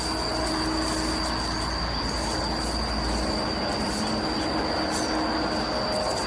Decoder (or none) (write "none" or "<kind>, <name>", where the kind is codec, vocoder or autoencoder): none